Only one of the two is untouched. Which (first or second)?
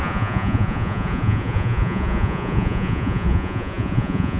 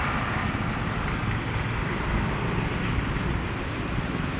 second